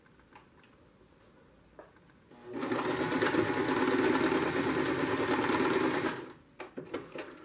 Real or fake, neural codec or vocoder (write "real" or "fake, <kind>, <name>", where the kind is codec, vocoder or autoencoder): real